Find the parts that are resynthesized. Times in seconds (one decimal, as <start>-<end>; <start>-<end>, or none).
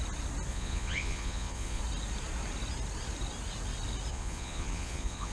0.5-1.8; 4.1-5.3